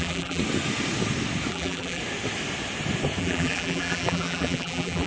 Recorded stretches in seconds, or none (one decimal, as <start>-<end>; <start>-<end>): 0.4-1.5; 2.0-3.2